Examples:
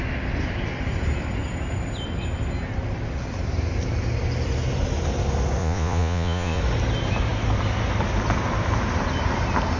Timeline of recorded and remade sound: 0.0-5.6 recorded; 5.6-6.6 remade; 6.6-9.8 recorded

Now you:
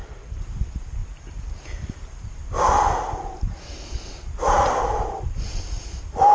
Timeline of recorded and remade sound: 0.0-6.3 recorded

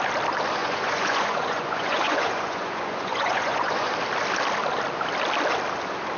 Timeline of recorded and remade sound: 0.0-0.6 recorded; 0.6-3.9 remade; 3.9-6.2 recorded

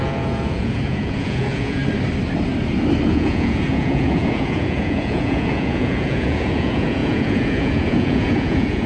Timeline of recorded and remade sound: 0.0-1.8 remade; 1.8-3.1 recorded; 3.1-8.9 remade

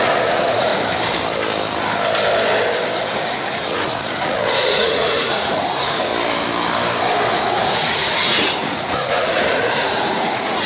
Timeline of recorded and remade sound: 0.0-0.7 remade; 0.7-3.3 recorded; 3.3-6.1 remade; 6.1-7.3 recorded; 7.3-10.7 remade

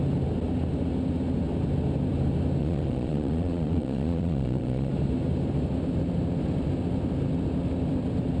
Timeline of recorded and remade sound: 0.0-2.6 recorded; 2.6-4.9 remade; 4.9-8.4 recorded